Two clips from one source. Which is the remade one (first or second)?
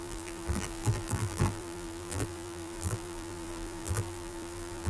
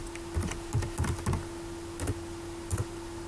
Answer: first